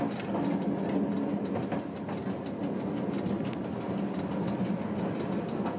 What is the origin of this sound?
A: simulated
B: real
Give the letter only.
B